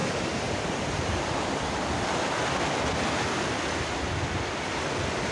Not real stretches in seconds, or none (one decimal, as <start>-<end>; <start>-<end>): 0.0-1.2